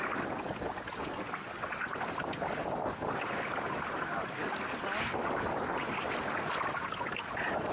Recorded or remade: recorded